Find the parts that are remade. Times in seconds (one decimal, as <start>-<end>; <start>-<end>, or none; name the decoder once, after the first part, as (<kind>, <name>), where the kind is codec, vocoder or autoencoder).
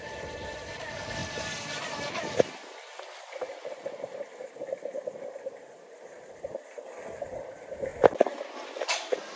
0.0-1.2 (vocoder, BigVGAN v2); 6.1-7.9; 8.7-9.4